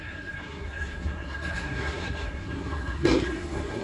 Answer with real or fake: fake